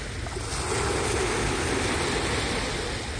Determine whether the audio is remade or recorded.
recorded